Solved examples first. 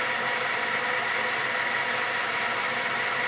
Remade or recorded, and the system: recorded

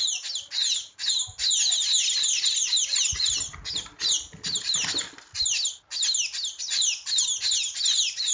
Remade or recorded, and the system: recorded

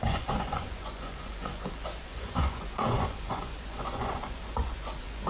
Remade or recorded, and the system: remade, vocoder, Vocos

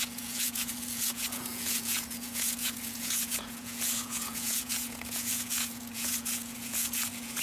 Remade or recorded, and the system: remade, vocoder, Vocos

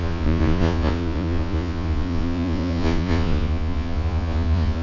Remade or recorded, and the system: remade, vocoder, Vocos